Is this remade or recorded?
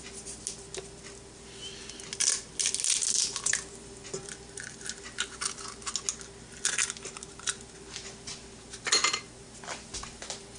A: recorded